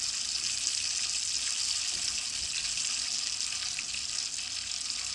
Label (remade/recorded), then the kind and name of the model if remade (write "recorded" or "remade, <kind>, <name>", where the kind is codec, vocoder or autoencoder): recorded